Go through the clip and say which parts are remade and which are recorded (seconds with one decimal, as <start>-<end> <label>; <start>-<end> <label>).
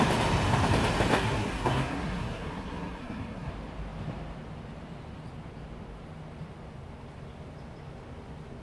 0.0-1.1 recorded; 1.1-3.5 remade; 3.5-8.6 recorded